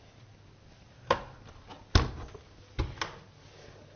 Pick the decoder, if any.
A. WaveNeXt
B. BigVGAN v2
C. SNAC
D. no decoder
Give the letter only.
D